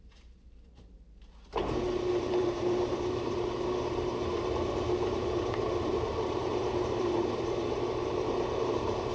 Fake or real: fake